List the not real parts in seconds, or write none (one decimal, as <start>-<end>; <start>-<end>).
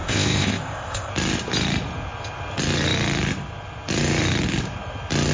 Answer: 0.0-1.1